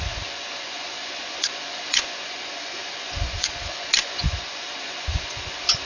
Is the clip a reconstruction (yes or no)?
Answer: yes